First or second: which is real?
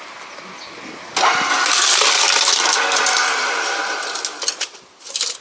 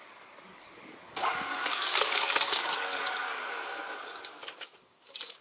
first